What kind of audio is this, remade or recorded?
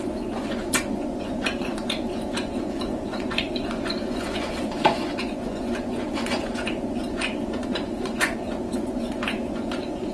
remade